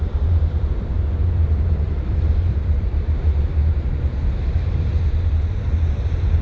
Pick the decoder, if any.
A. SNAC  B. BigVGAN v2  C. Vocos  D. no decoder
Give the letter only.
B